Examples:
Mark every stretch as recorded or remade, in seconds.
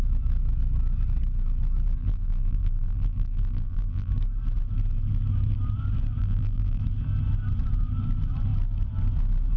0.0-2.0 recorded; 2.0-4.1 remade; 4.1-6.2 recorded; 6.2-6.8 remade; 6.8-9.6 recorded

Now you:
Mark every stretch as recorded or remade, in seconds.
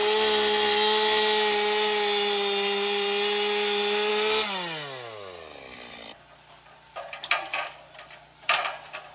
0.0-9.1 recorded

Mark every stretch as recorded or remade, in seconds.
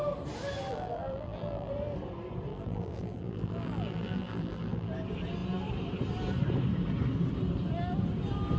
0.0-0.7 recorded; 0.7-1.7 remade; 1.7-2.5 recorded; 2.5-4.9 remade; 4.9-8.6 recorded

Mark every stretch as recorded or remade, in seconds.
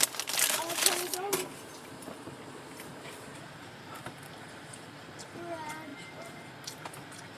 0.0-1.5 recorded; 1.5-3.9 remade; 3.9-5.9 recorded; 5.9-6.4 remade; 6.4-7.4 recorded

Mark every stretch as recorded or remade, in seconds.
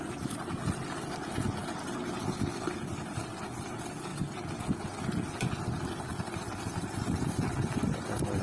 0.0-1.6 remade; 1.6-3.5 recorded; 3.5-4.1 remade; 4.1-6.0 recorded; 6.0-8.4 remade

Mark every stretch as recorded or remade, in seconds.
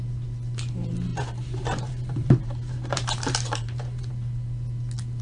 0.0-1.1 recorded; 1.1-4.1 remade; 4.1-5.2 recorded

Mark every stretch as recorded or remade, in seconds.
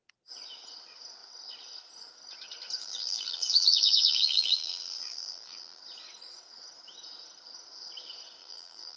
0.0-2.8 recorded; 2.8-5.8 remade; 5.8-8.4 recorded; 8.4-9.0 remade